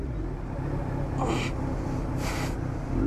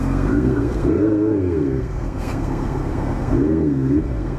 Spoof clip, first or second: second